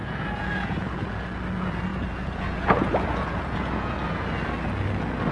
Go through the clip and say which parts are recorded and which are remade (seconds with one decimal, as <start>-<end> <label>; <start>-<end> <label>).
0.0-1.1 remade; 1.1-1.9 recorded; 1.9-4.3 remade; 4.3-5.3 recorded